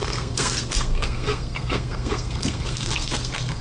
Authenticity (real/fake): fake